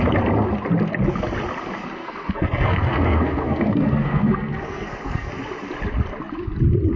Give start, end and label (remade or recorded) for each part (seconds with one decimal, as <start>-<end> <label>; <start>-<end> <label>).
0.0-2.0 recorded; 2.0-5.3 remade; 5.3-7.0 recorded